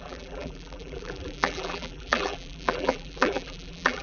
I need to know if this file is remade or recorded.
remade